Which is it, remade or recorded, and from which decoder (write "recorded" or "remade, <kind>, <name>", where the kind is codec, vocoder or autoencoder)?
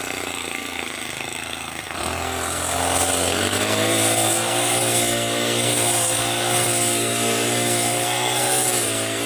remade, codec, SNAC